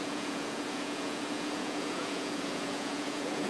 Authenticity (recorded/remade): remade